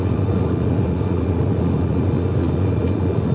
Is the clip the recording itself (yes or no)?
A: no